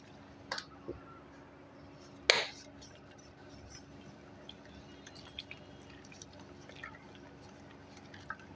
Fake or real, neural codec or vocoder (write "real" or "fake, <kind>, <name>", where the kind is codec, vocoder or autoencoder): real